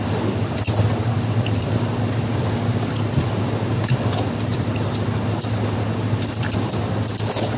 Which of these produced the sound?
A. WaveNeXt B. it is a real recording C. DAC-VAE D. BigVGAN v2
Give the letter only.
B